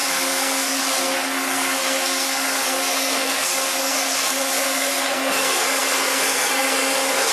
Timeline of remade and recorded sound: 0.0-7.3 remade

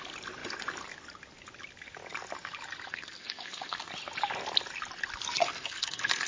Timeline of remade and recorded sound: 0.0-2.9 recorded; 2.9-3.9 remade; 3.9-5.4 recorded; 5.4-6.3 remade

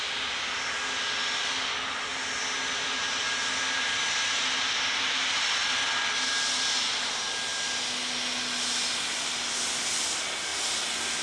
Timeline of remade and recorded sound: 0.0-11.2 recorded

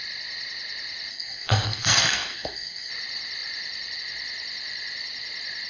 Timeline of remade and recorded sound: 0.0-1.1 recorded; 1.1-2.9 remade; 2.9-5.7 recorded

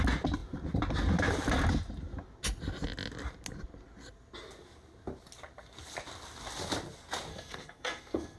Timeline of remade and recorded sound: 0.0-7.3 recorded; 7.3-8.4 remade

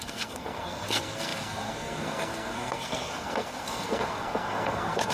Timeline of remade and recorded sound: 0.0-5.1 remade

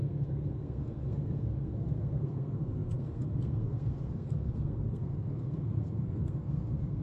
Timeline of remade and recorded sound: 0.0-7.0 remade

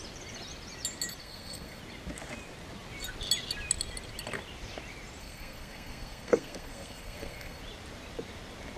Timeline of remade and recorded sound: 0.0-1.2 recorded; 1.2-1.8 remade; 1.8-5.2 recorded; 5.2-7.6 remade; 7.6-8.8 recorded